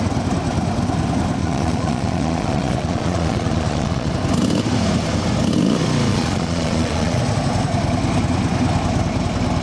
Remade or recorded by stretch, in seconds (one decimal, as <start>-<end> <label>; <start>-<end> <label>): 0.0-1.4 recorded; 1.4-4.1 remade; 4.1-6.1 recorded; 6.1-7.2 remade; 7.2-9.6 recorded